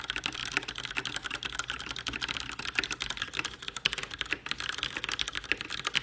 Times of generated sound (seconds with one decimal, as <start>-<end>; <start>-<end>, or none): none